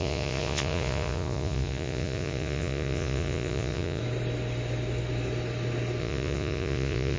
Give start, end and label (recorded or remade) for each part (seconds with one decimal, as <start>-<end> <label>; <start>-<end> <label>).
0.0-4.0 remade; 4.0-6.0 recorded; 6.0-7.2 remade